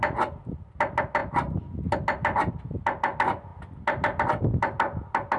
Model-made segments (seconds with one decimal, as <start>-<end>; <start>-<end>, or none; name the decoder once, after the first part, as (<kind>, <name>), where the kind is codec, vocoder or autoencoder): none